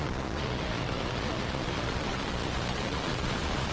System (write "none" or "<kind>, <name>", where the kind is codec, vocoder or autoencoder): vocoder, Vocos